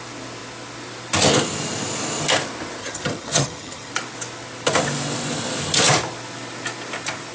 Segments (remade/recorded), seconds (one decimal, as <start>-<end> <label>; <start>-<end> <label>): 0.0-2.8 recorded; 2.8-3.9 remade; 3.9-7.3 recorded